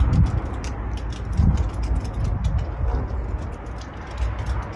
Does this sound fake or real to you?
real